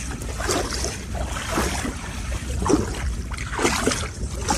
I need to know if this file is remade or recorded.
recorded